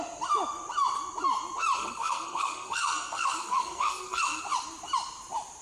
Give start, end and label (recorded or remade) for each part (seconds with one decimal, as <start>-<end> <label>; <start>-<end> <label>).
0.0-1.8 recorded; 1.8-4.4 remade; 4.4-5.6 recorded